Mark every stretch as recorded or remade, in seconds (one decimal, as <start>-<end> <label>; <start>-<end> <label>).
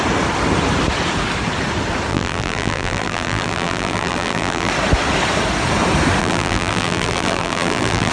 0.0-2.1 recorded; 2.1-4.7 remade; 4.7-6.2 recorded; 6.2-8.1 remade